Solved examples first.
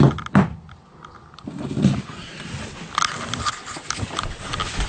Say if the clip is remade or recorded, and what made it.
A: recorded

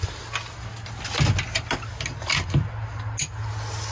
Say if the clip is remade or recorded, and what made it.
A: recorded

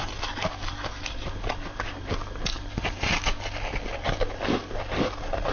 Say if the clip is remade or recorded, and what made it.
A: recorded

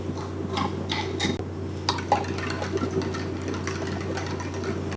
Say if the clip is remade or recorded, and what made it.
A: recorded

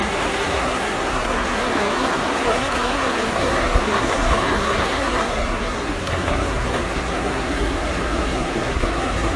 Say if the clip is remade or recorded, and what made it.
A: remade, codec, SNAC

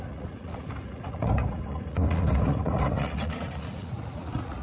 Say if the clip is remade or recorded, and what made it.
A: remade, vocoder, Vocos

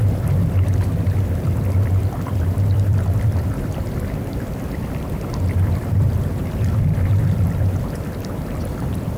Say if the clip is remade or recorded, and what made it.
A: remade, vocoder, BigVGAN v2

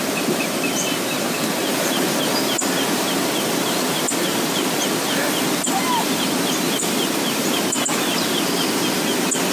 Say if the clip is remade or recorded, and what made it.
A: remade, vocoder, BigVGAN v2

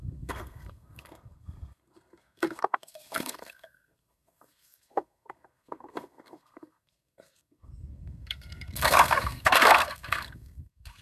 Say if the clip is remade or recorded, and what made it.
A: remade, codec, SNAC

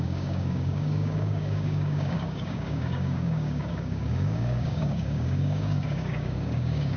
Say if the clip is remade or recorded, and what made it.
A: remade, codec, DAC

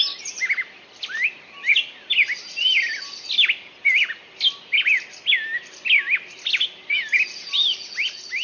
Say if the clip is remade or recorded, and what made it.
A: recorded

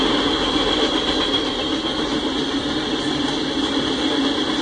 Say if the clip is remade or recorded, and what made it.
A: recorded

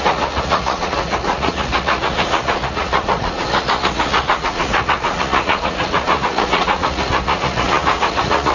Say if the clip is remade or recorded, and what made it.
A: remade, vocoder, Vocos